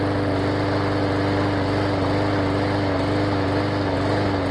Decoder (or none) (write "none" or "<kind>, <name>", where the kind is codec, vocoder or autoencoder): none